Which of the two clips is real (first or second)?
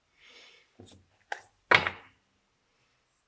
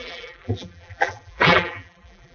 first